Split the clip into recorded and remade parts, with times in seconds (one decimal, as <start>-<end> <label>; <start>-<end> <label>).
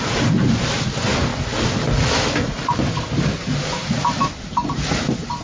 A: 0.0-1.3 remade; 1.3-2.5 recorded; 2.5-5.4 remade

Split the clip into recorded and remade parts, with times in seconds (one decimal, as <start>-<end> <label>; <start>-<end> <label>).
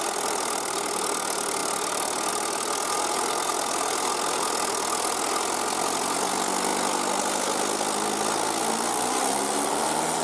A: 0.0-10.2 recorded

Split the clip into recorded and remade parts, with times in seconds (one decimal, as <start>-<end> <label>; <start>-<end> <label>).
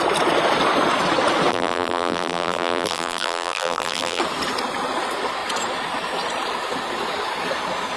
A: 0.0-1.5 recorded; 1.5-4.2 remade; 4.2-8.0 recorded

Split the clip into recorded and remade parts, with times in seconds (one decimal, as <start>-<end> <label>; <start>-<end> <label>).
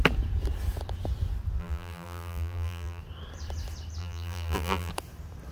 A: 0.0-1.6 recorded; 1.6-3.0 remade; 3.0-4.0 recorded; 4.0-4.9 remade; 4.9-5.5 recorded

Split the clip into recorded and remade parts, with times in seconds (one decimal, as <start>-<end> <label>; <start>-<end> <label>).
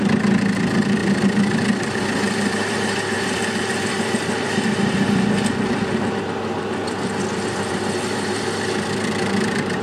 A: 0.0-9.8 remade